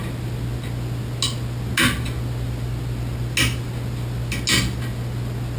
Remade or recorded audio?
recorded